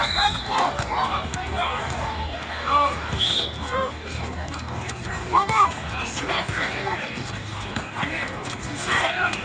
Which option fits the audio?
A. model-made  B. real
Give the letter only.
A